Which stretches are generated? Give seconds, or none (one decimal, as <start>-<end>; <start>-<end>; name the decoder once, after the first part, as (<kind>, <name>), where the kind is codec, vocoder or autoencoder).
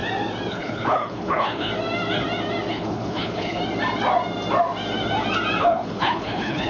0.5-1.7 (codec, HILCodec); 2.7-3.6; 5.6-6.7